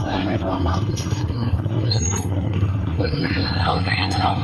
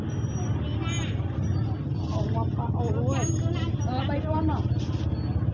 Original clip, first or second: second